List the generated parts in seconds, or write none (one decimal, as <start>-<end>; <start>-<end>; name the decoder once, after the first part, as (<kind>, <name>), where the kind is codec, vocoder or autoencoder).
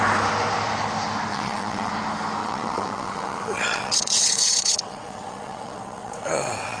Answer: 1.3-1.9 (vocoder, WaveNeXt); 2.4-6.8